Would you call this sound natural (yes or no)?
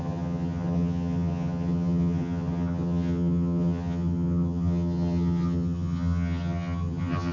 no